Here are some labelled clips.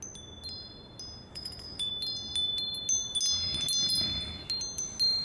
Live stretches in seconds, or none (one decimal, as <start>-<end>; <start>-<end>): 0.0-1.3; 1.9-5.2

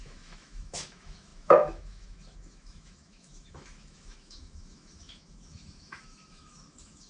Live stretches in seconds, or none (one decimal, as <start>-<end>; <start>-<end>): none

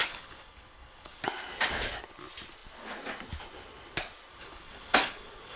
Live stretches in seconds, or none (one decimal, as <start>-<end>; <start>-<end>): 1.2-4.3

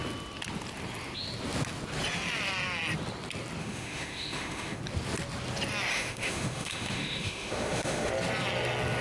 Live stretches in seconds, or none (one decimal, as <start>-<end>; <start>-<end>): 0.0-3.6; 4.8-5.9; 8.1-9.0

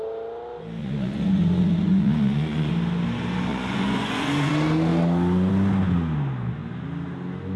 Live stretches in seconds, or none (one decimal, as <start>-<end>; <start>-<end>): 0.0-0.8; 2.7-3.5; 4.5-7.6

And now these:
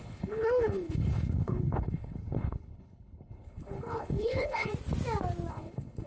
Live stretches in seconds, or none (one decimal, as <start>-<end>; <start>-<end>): 4.7-5.5